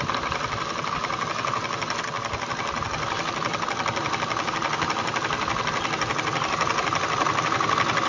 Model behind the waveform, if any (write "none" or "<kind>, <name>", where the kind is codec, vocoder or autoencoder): none